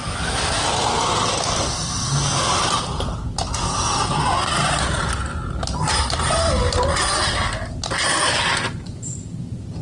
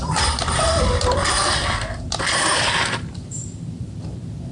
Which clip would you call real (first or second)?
first